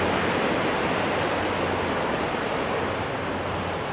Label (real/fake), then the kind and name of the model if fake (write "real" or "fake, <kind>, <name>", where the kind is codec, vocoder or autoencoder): real